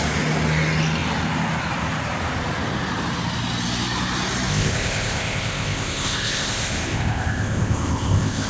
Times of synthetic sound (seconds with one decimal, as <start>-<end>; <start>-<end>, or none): 4.5-8.5